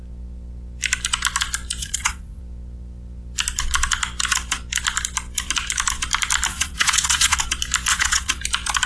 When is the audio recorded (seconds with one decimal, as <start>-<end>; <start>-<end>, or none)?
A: 0.0-1.8; 2.4-6.5; 7.4-7.9; 8.4-8.9

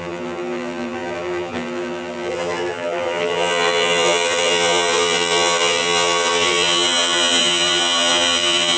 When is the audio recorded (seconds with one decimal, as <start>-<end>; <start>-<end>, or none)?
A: none